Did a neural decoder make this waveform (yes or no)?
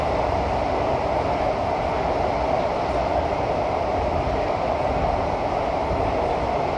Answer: no